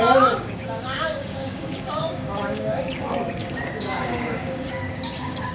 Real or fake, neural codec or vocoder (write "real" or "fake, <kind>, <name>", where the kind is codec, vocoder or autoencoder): fake, codec, DAC